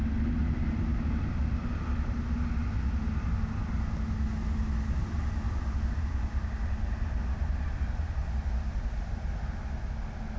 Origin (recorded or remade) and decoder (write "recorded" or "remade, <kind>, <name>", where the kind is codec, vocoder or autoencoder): recorded